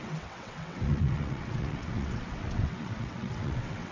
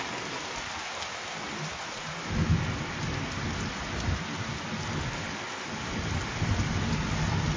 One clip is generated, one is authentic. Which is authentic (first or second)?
second